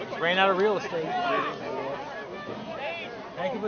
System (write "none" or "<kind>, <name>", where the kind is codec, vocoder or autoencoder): none